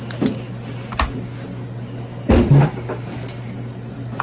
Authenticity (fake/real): real